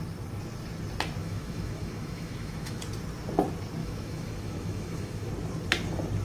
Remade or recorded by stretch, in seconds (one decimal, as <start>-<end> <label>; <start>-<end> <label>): 0.0-1.2 recorded; 1.2-2.8 remade; 2.8-3.8 recorded; 3.8-5.3 remade; 5.3-6.2 recorded